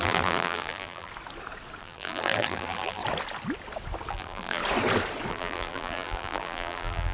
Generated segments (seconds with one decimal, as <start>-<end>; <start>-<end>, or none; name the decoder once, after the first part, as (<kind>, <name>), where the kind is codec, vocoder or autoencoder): 0.0-1.1 (vocoder, BigVGAN v2); 1.8-3.0; 4.1-4.6; 5.3-7.1